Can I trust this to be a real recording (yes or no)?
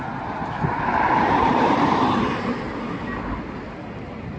yes